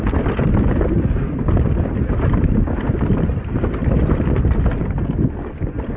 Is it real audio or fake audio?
real